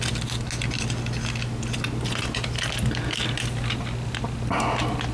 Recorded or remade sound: recorded